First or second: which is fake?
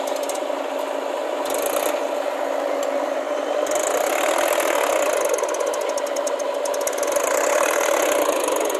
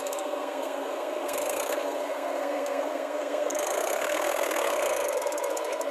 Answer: second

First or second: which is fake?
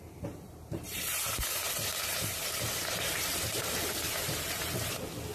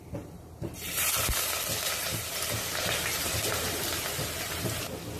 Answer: first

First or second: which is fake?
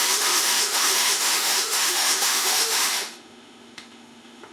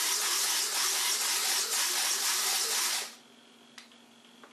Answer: first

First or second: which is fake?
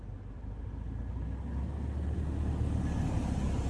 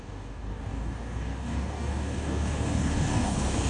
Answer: second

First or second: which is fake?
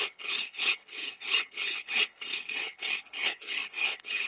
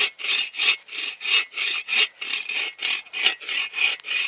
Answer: first